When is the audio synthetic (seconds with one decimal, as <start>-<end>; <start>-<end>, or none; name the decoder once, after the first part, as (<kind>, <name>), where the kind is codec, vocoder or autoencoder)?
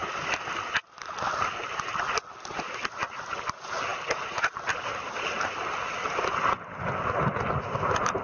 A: none